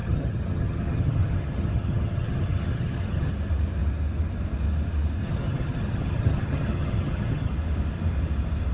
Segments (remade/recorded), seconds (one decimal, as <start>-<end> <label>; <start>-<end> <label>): 0.0-3.3 remade; 3.3-5.2 recorded; 5.2-7.5 remade; 7.5-8.7 recorded